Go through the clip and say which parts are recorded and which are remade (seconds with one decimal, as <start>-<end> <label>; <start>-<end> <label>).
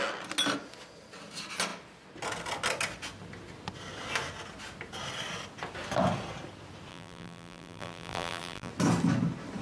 0.0-6.9 recorded; 6.9-8.7 remade; 8.7-9.6 recorded